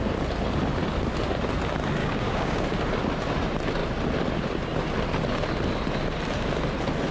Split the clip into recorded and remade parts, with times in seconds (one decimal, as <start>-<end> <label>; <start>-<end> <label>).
0.0-2.0 recorded; 2.0-2.6 remade; 2.6-7.1 recorded